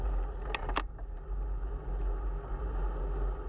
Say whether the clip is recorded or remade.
recorded